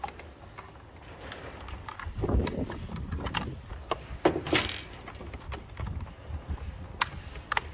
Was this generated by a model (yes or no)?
no